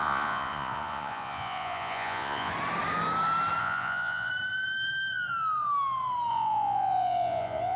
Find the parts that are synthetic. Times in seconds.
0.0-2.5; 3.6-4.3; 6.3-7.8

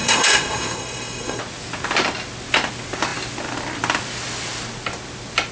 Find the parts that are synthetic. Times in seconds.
0.0-1.4

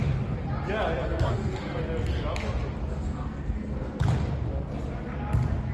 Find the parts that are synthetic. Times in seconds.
1.0-1.8; 2.9-4.0

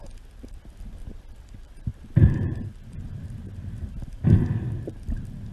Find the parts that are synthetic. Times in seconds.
none

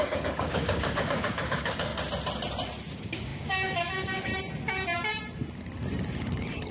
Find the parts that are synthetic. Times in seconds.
0.0-1.9; 2.9-4.3; 6.2-6.7

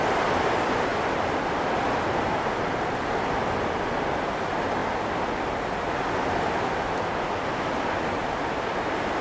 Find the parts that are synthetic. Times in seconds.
none

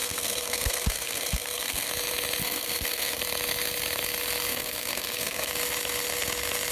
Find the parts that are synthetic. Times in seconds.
0.0-1.9; 2.4-3.2; 4.5-5.5

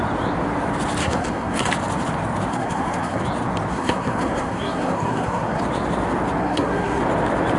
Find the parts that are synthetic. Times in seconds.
1.0-1.7; 2.5-3.2; 3.7-5.6; 6.4-7.0